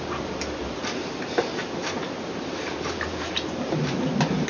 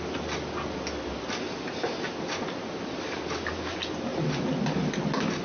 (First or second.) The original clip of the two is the second